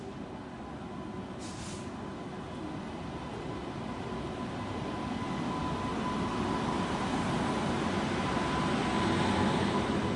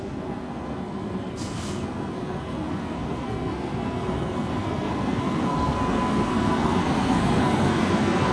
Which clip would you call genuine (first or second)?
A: first